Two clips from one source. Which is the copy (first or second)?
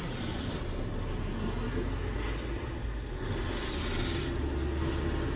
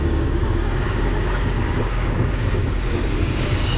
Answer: second